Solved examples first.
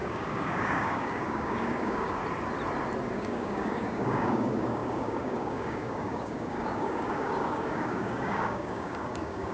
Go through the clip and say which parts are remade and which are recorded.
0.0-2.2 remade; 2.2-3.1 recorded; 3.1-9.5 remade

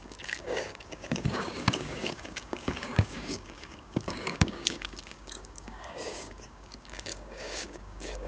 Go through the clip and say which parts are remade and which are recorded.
0.0-8.3 remade

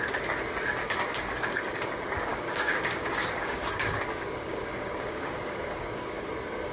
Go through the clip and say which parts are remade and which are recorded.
0.0-0.8 recorded; 0.8-1.6 remade; 1.6-2.3 recorded; 2.3-6.3 remade; 6.3-6.7 recorded

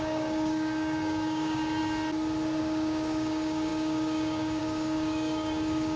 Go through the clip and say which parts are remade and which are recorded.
0.0-1.8 remade; 1.8-2.6 recorded; 2.6-6.0 remade

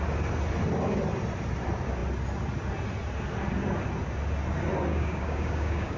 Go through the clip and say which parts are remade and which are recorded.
0.0-4.9 recorded; 4.9-6.0 remade